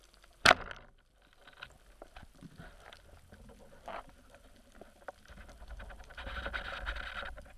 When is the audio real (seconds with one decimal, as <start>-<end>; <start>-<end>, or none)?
0.0-7.6